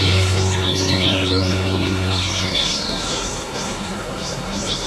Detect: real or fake fake